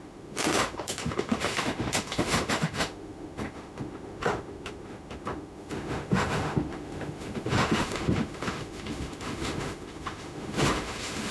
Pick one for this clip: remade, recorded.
remade